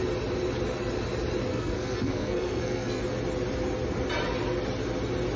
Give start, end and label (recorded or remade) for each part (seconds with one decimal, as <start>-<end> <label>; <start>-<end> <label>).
0.0-1.5 recorded; 1.5-3.0 remade; 3.0-5.4 recorded